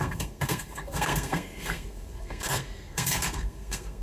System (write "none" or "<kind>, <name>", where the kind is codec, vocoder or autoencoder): codec, SNAC